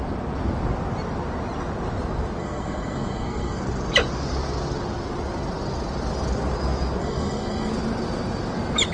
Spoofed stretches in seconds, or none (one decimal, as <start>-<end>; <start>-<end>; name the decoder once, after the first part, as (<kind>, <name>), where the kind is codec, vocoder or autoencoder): 2.4-3.6 (codec, SNAC); 7.0-7.7